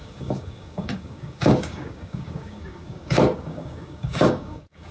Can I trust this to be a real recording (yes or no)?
no